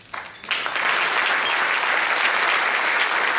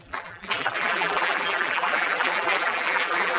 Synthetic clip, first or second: second